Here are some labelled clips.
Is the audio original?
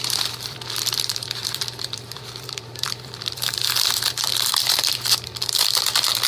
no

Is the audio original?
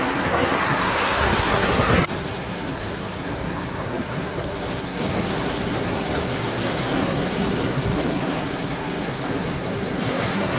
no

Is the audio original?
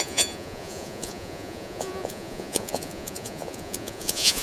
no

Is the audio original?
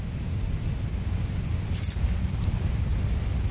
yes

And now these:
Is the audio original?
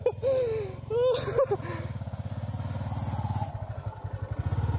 yes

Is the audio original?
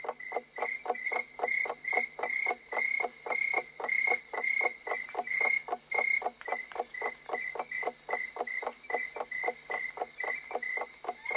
yes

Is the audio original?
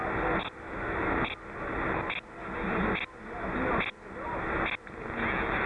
yes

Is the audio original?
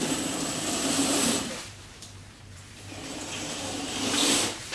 no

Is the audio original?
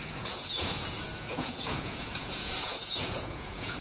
no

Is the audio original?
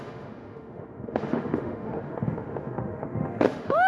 no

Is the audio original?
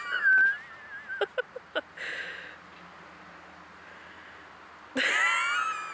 yes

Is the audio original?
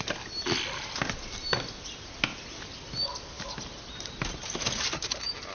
yes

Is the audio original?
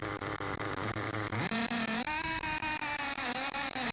no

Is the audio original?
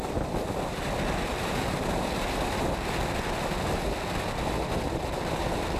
yes